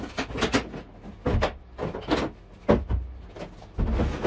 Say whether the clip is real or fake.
real